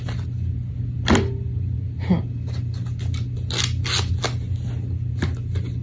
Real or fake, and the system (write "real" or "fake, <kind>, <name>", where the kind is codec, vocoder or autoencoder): real